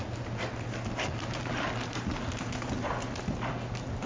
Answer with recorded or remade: recorded